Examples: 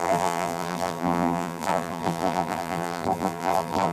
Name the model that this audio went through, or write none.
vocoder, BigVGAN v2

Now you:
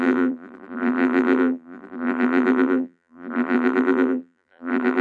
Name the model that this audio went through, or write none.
vocoder, BigVGAN v2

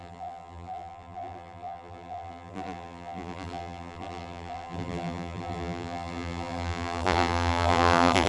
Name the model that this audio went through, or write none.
vocoder, BigVGAN v2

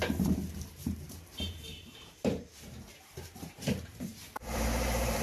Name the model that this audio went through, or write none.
vocoder, BigVGAN v2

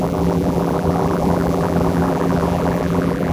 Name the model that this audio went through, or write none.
vocoder, BigVGAN v2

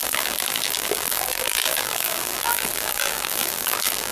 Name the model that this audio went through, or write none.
vocoder, BigVGAN v2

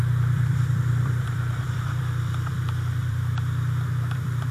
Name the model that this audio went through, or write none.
vocoder, BigVGAN v2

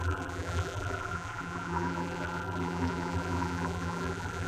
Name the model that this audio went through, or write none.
vocoder, BigVGAN v2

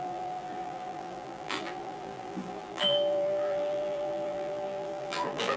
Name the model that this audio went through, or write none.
vocoder, BigVGAN v2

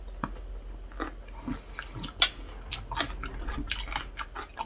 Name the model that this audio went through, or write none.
none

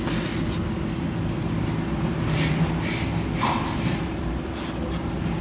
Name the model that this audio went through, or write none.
none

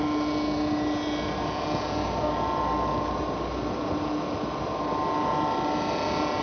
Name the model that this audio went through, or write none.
none